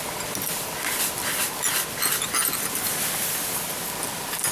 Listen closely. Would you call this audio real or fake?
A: real